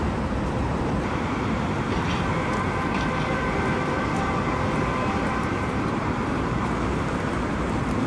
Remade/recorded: remade